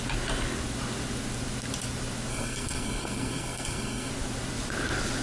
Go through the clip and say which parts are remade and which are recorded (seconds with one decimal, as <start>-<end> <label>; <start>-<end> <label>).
0.0-2.3 recorded; 2.3-4.1 remade; 4.1-5.2 recorded